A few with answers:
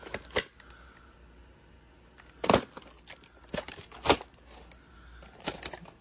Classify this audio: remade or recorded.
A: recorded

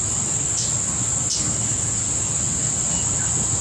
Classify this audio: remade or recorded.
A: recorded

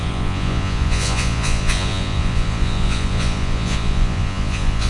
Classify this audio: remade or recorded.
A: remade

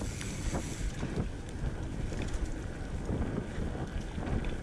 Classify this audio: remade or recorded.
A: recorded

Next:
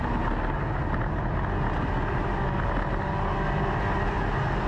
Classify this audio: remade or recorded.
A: recorded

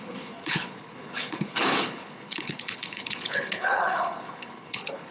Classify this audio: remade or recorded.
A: remade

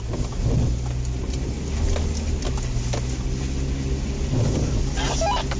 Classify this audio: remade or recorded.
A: recorded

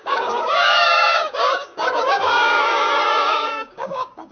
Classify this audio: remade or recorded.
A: remade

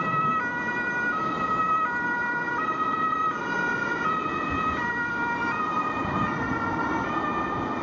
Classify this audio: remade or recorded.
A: recorded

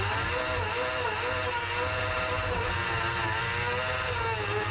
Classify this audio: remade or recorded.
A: recorded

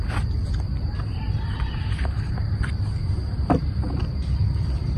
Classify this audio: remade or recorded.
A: remade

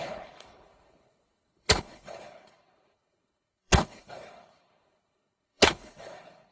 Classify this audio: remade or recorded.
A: remade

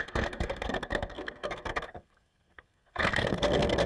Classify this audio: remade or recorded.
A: remade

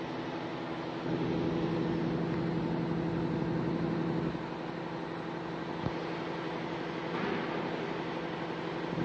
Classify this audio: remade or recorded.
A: recorded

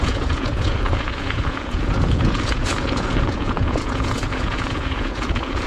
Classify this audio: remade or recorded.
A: remade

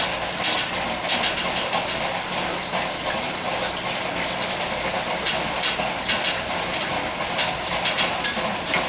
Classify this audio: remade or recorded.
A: recorded